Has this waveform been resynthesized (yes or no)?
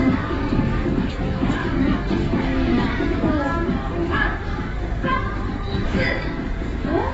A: yes